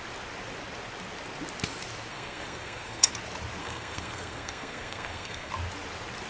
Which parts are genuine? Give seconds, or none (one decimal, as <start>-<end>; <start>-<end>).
0.0-2.1; 3.1-3.6; 5.5-6.3